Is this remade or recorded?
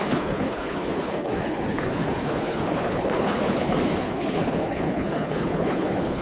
remade